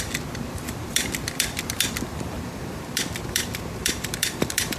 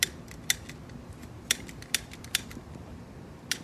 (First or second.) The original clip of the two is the second